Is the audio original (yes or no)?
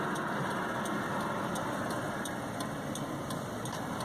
yes